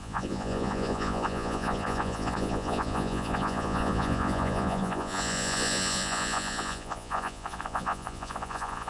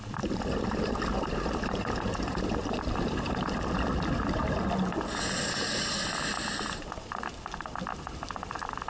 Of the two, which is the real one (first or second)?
second